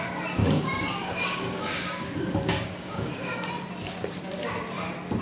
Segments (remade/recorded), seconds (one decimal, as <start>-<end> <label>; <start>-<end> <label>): 0.0-0.4 recorded; 0.4-3.5 remade; 3.5-5.2 recorded